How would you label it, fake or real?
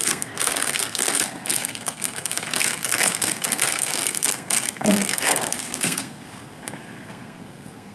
fake